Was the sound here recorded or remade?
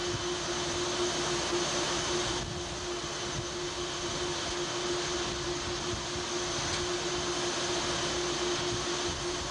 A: recorded